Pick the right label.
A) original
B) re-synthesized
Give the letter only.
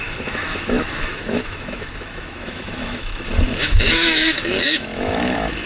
B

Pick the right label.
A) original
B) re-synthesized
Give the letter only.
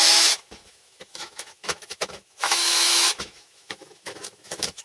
B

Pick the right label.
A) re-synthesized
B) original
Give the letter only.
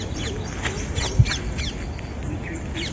B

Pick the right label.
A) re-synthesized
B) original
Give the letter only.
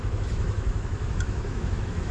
A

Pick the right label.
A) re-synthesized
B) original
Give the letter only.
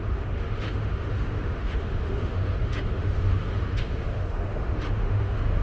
A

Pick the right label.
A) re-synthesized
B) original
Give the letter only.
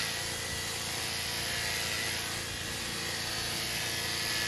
B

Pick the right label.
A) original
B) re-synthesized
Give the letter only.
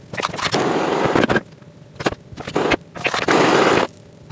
A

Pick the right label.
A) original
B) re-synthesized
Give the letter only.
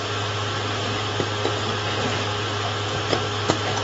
A